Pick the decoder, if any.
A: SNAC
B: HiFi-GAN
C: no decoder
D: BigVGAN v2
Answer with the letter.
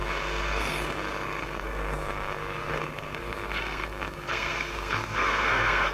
A